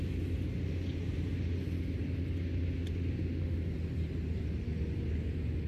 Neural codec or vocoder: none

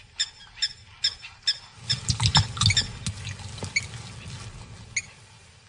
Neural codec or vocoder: none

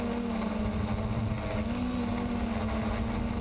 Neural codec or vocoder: none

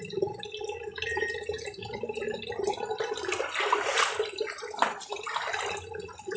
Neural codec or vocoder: none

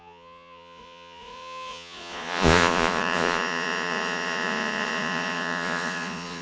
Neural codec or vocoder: vocoder, Vocos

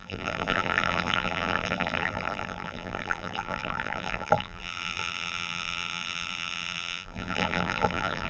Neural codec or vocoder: vocoder, BigVGAN v2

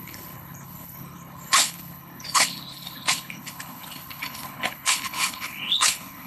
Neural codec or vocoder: codec, HILCodec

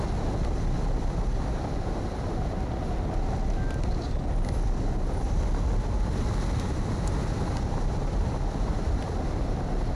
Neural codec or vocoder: none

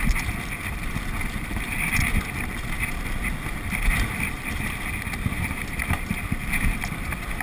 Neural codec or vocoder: vocoder, BigVGAN v2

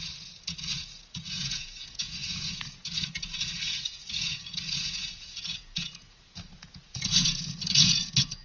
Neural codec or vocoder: vocoder, Vocos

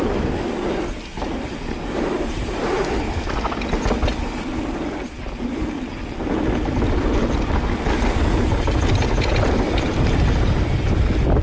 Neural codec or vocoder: none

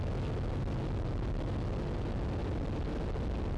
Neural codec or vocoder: none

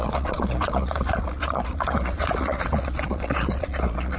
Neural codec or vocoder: vocoder, Vocos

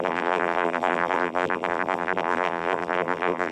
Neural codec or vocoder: vocoder, BigVGAN v2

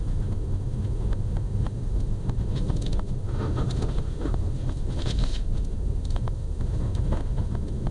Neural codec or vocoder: autoencoder, DAC-VAE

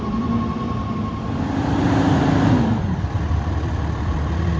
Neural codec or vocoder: vocoder, BigVGAN v2